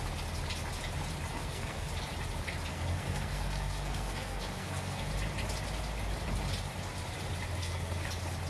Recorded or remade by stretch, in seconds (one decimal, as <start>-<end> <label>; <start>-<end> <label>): 0.0-1.3 recorded; 1.3-1.9 remade; 1.9-2.7 recorded; 2.7-5.1 remade; 5.1-7.6 recorded; 7.6-8.1 remade; 8.1-8.5 recorded